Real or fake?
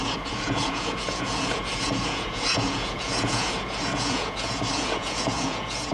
fake